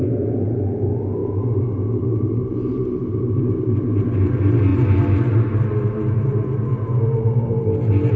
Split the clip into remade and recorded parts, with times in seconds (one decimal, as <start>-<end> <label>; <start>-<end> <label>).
0.0-8.2 remade